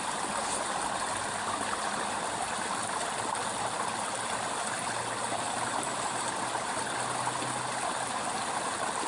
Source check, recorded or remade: recorded